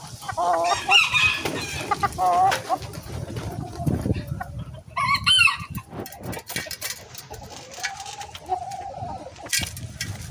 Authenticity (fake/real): real